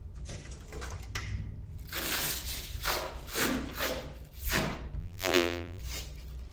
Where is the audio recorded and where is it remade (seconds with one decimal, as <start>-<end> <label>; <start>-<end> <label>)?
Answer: 0.0-5.0 recorded; 5.0-5.8 remade; 5.8-6.5 recorded